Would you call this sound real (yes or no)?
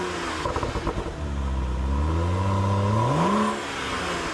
yes